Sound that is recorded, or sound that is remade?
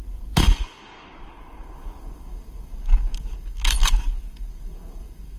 remade